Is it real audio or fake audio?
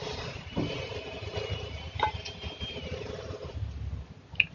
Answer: real